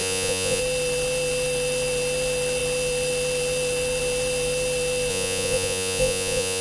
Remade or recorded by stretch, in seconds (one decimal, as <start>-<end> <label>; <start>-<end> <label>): 0.0-0.6 remade; 0.6-5.1 recorded; 5.1-6.6 remade